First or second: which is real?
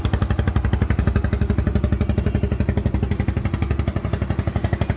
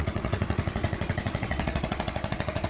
first